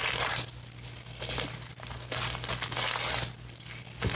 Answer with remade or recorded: recorded